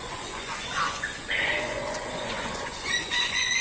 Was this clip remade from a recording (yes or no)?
yes